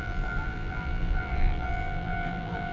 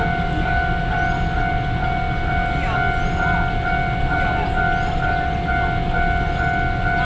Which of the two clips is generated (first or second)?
first